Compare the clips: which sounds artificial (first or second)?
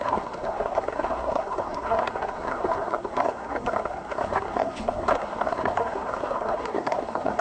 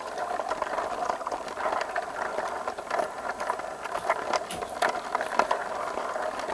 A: first